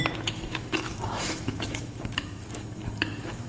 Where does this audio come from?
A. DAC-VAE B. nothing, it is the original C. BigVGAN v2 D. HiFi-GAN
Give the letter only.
A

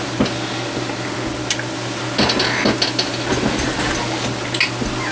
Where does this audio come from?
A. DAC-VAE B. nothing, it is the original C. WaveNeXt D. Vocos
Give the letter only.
B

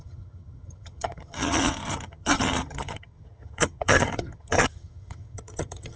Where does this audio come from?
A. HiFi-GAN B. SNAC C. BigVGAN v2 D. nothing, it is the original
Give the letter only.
A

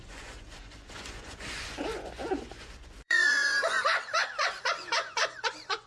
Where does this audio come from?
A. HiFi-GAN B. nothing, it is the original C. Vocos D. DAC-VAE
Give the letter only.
C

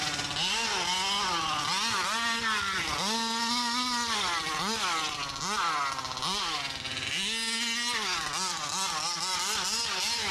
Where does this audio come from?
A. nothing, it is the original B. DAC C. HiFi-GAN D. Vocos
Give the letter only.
A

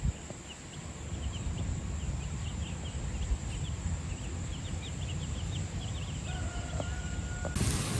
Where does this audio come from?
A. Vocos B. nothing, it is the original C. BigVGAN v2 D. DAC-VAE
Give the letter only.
B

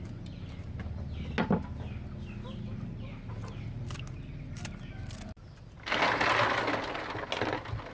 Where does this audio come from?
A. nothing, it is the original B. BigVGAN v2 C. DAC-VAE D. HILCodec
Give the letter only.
A